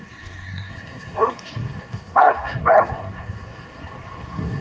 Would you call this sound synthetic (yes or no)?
yes